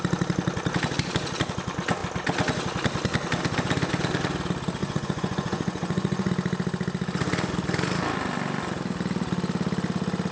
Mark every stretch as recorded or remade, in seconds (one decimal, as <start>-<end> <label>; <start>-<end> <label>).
0.0-4.8 recorded; 4.8-6.3 remade; 6.3-10.3 recorded